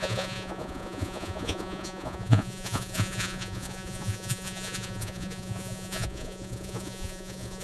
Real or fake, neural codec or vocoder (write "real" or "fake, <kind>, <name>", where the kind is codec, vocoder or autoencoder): fake, vocoder, Vocos